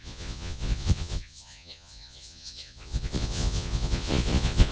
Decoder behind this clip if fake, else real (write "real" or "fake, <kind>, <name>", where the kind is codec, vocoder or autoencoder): fake, vocoder, Vocos